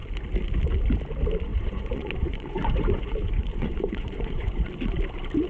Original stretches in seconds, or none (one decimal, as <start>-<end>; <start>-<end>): 0.0-1.5; 4.7-5.5